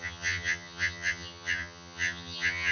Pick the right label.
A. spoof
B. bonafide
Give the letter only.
A